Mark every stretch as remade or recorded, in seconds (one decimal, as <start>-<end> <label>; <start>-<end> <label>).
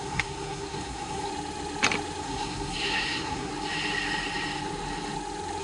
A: 0.0-1.3 remade; 1.3-2.2 recorded; 2.2-3.5 remade; 3.5-5.6 recorded